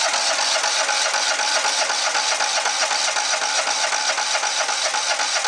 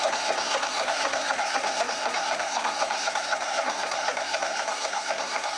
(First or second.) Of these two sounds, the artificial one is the second